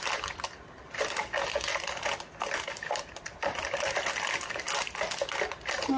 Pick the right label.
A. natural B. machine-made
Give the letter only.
A